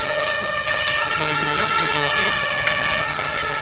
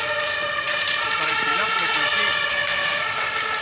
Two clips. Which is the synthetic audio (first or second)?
first